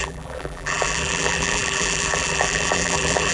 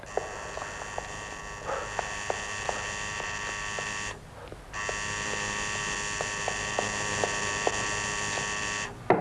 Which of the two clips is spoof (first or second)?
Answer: first